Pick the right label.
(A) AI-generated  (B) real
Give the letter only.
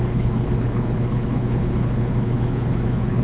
A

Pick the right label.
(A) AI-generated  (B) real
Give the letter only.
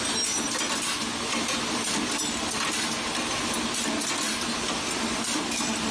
B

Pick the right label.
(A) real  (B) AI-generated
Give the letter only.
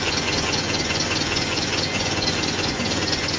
B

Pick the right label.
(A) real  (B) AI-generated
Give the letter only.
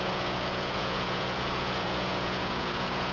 B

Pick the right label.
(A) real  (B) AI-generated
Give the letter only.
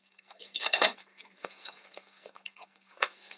B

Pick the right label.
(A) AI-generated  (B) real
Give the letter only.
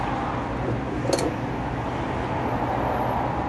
B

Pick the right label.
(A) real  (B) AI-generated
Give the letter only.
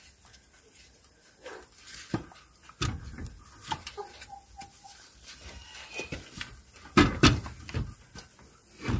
A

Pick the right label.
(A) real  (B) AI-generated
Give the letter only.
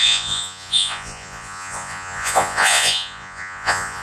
B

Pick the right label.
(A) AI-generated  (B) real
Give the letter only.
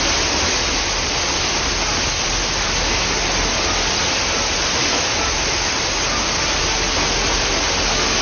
B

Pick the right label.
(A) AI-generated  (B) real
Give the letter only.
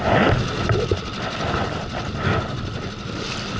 B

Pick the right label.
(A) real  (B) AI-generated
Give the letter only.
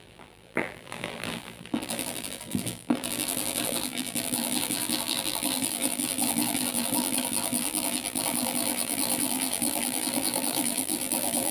B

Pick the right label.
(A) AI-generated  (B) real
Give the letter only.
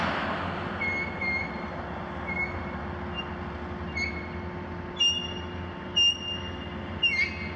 B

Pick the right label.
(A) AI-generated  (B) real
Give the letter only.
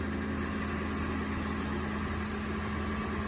B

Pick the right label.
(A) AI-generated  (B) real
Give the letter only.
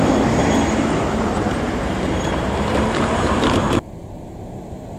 A